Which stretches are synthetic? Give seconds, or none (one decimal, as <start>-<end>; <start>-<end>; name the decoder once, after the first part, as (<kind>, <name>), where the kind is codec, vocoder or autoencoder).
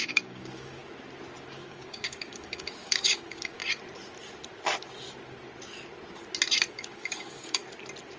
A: 0.0-0.8 (codec, DAC); 1.5-3.6; 6.7-7.6